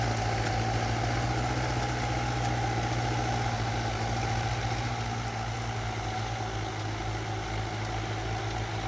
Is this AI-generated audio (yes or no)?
no